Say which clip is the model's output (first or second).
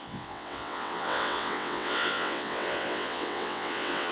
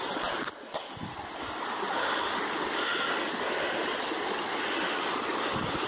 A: first